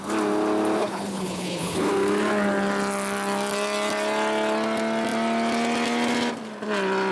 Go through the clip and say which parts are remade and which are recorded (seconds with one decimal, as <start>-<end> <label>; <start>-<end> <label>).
0.0-0.8 recorded; 0.8-1.9 remade; 1.9-7.1 recorded